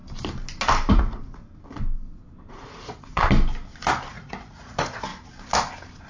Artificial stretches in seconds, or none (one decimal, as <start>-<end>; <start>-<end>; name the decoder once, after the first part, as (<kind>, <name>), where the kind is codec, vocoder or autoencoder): 0.9-1.4 (vocoder, Vocos); 2.5-3.2; 4.1-5.1